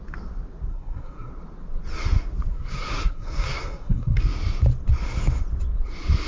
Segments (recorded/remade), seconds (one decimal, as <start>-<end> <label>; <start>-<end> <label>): 0.0-0.7 recorded; 0.7-1.3 remade; 1.3-2.5 recorded; 2.5-4.2 remade; 4.2-6.3 recorded